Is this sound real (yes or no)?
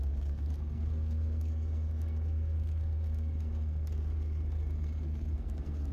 no